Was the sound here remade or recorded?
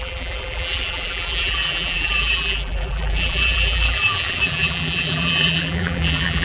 remade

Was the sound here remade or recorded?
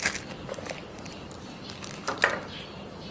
remade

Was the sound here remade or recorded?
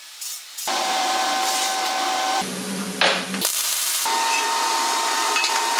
remade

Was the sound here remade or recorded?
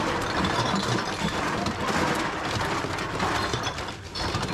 recorded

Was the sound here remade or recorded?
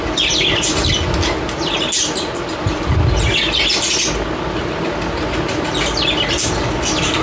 recorded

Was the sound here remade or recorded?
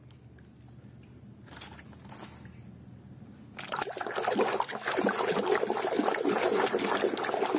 recorded